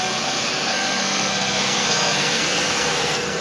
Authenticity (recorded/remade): remade